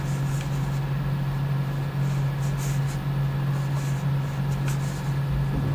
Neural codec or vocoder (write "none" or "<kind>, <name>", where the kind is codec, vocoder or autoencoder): none